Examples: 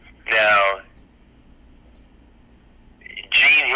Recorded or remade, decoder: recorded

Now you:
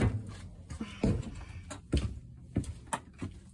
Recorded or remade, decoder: recorded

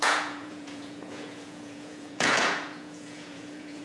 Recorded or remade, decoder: remade, vocoder, Vocos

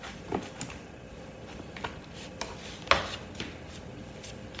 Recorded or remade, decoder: recorded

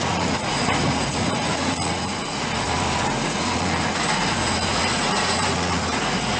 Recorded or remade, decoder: remade, vocoder, Vocos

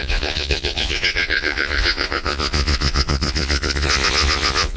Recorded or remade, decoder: remade, vocoder, Vocos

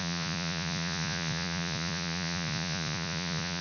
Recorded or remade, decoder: remade, vocoder, Vocos